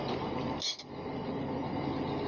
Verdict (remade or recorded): recorded